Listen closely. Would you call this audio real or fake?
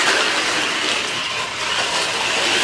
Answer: real